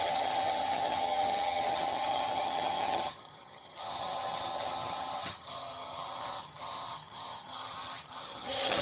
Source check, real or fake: fake